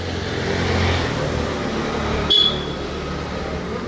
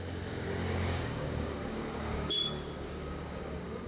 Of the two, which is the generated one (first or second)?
second